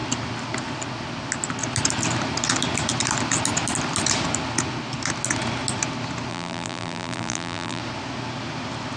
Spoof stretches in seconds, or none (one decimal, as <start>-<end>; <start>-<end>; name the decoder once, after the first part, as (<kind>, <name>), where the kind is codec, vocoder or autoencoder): 6.3-7.8 (vocoder, BigVGAN v2)